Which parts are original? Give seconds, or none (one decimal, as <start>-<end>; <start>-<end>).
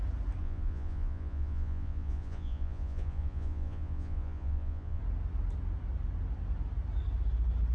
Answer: 0.0-0.4; 5.0-7.7